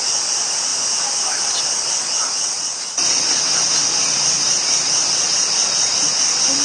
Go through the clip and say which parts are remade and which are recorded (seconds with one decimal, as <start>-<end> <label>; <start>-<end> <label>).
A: 0.0-2.2 recorded; 2.2-2.7 remade; 2.7-6.6 recorded